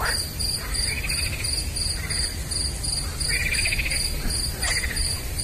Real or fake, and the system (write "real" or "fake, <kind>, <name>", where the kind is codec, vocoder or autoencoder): real